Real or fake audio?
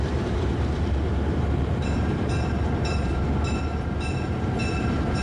fake